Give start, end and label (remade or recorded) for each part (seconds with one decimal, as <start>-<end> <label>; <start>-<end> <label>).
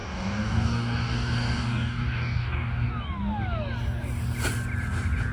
0.0-2.9 remade; 2.9-5.3 recorded